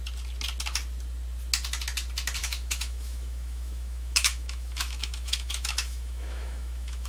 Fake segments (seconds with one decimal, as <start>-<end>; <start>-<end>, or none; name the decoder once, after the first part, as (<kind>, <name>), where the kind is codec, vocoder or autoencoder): 2.4-7.1 (autoencoder, DAC-VAE)